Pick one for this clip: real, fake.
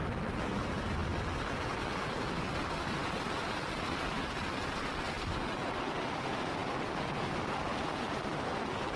real